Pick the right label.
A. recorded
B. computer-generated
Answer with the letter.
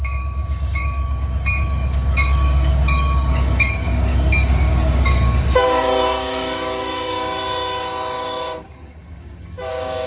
B